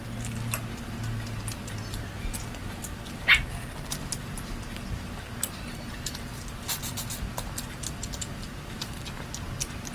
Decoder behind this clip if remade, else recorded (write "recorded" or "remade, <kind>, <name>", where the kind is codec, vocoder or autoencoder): recorded